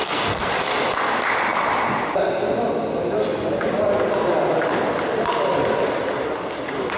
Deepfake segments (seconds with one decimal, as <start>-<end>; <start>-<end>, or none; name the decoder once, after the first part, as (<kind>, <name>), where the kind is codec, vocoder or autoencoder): 0.0-0.5 (codec, SNAC)